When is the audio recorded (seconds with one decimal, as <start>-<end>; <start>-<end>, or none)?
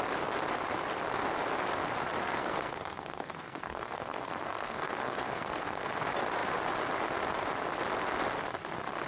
0.0-2.2; 5.9-9.1